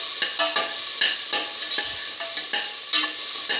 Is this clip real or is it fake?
real